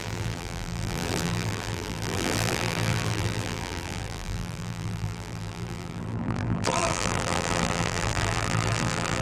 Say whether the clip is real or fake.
fake